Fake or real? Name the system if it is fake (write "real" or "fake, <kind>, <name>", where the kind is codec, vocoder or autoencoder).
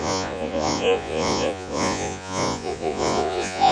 fake, vocoder, Vocos